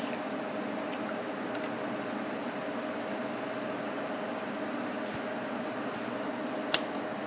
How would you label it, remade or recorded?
recorded